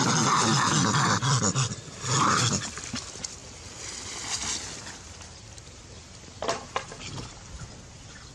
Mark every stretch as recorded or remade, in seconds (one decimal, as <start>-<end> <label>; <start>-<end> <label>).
0.0-8.3 recorded